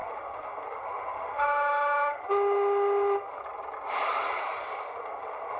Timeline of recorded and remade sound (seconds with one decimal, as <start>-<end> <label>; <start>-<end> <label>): 0.0-3.4 remade; 3.4-4.4 recorded; 4.4-5.6 remade